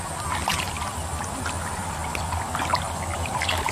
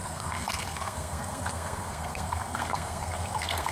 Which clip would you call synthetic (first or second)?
second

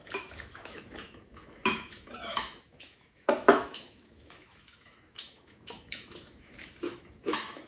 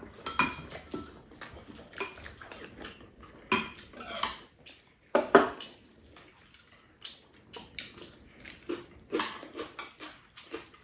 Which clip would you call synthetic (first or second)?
first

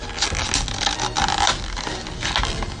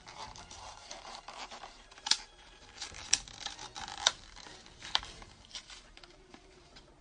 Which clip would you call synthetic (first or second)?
second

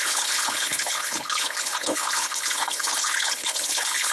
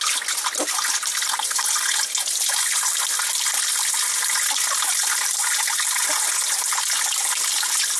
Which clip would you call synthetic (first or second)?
first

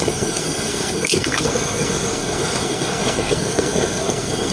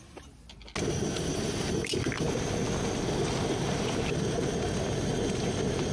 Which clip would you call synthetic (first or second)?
first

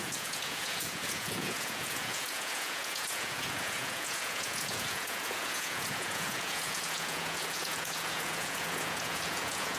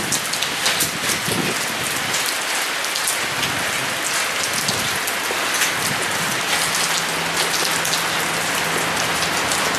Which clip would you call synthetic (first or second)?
first